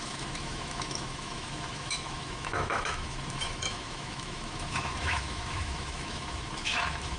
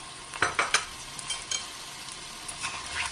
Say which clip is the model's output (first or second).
first